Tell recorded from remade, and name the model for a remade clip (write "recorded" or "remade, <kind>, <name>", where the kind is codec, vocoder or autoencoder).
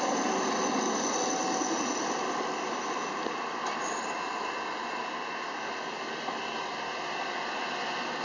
recorded